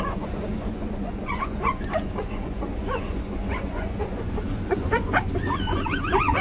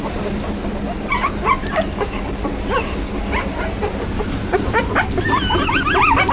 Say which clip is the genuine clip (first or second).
second